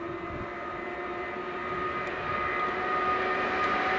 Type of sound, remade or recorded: recorded